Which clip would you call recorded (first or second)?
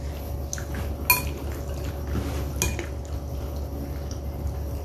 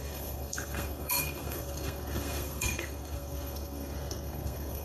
first